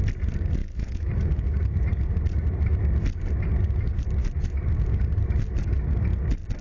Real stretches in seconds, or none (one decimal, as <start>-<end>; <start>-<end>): 0.0-0.6; 1.1-6.6

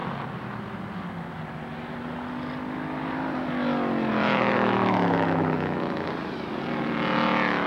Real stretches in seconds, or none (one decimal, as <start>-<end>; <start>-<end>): 0.0-4.1; 6.1-7.7

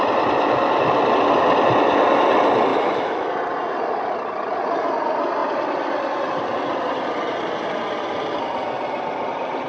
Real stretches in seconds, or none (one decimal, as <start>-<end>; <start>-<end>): 0.0-2.7; 3.3-9.7

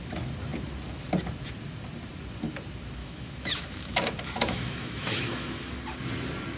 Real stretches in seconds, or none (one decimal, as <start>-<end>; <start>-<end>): 0.0-3.0; 5.8-6.6

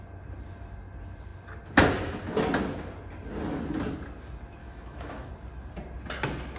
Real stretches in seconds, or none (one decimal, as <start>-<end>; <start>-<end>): 0.0-4.6; 5.3-6.6

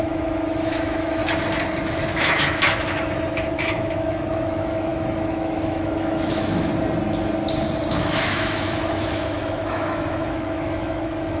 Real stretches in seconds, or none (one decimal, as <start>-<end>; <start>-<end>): 1.2-2.0; 6.7-8.0

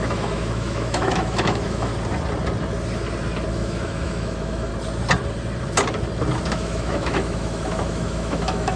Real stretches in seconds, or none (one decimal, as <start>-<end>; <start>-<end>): 1.9-3.5; 4.7-6.5

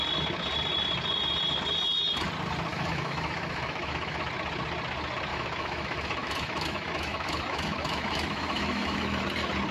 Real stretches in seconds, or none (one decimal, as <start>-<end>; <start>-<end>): 0.0-2.7; 4.2-5.3; 9.2-9.7